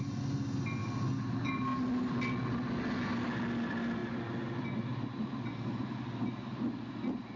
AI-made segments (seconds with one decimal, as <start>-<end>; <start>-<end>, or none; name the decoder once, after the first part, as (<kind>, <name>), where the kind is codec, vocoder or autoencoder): none